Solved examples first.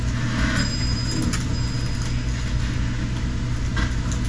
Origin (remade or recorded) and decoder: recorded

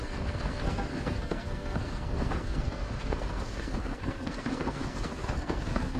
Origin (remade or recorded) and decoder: remade, codec, SNAC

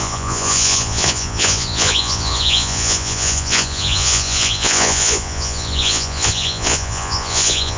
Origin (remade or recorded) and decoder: remade, vocoder, Vocos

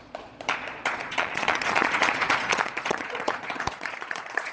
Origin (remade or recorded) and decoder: remade, vocoder, Vocos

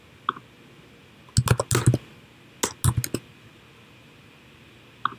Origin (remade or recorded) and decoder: recorded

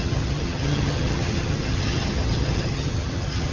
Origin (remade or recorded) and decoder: remade, vocoder, HiFi-GAN